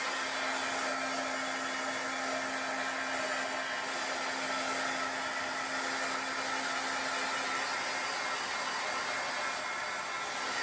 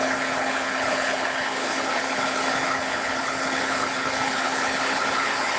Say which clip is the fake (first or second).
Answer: second